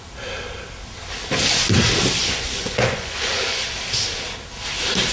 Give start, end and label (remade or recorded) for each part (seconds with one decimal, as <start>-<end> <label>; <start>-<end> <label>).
0.0-2.2 recorded; 2.2-3.7 remade; 3.7-5.1 recorded